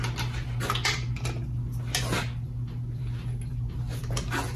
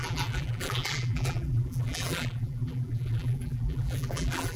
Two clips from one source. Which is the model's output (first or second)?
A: second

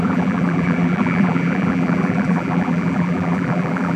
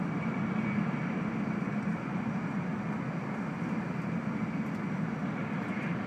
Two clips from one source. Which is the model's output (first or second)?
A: first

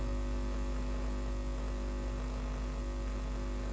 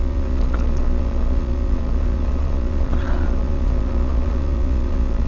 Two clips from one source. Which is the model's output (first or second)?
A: second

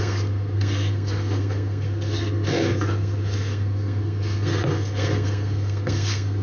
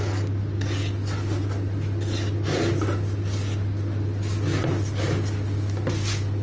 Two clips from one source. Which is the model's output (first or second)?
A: first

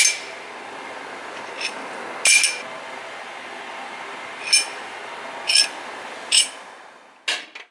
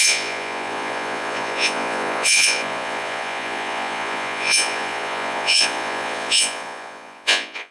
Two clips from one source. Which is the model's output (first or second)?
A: second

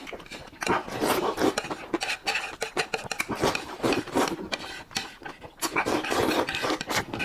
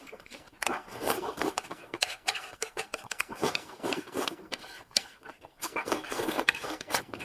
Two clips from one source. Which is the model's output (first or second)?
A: second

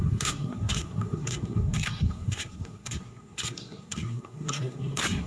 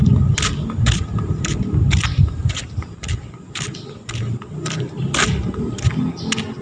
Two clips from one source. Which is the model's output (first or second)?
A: first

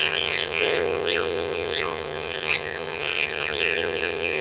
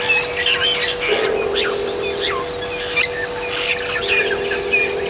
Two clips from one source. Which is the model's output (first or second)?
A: first